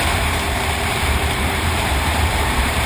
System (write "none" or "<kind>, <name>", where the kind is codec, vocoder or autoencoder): vocoder, BigVGAN v2